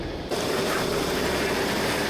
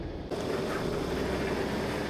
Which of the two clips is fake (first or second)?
first